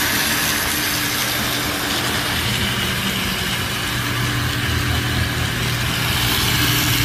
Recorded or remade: recorded